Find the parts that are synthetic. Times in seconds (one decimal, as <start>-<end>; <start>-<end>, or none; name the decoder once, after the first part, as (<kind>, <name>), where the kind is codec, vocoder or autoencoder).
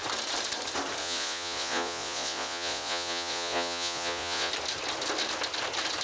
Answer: 1.0-4.5 (vocoder, Vocos)